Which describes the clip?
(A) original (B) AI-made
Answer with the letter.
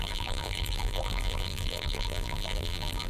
B